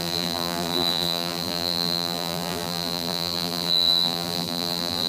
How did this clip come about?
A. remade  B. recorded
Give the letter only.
A